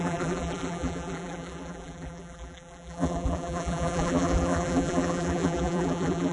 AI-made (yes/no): yes